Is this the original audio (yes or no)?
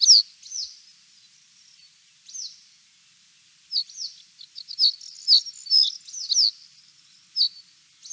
yes